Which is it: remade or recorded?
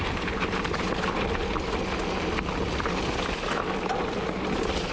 recorded